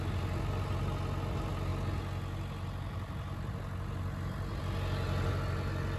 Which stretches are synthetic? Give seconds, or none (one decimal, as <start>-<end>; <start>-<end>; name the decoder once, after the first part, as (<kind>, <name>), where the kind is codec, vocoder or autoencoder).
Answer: none

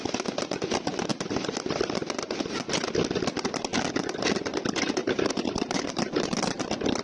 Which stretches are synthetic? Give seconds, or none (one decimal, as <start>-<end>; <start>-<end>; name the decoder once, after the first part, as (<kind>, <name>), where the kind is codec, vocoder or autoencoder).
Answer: 5.0-6.6 (vocoder, BigVGAN v2)

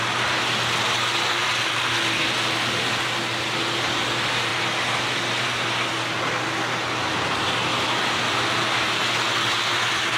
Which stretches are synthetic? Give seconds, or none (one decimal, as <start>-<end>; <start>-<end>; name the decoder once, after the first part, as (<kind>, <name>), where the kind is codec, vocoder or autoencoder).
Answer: none

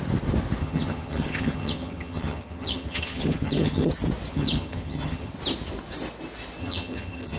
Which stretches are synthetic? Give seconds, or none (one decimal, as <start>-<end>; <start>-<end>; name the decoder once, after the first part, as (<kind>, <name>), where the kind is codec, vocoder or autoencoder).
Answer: 0.6-3.9 (vocoder, HiFi-GAN); 4.3-5.3; 6.6-7.4

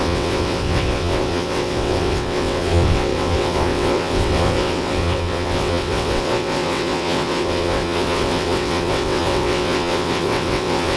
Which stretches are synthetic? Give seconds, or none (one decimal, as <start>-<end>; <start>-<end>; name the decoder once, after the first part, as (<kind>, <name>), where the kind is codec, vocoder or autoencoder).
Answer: 0.0-11.0 (vocoder, WaveNeXt)